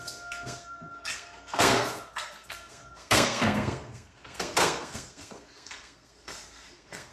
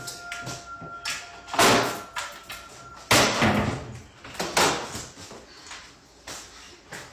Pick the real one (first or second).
second